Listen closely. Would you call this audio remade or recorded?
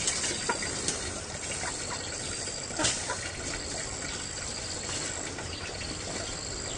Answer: recorded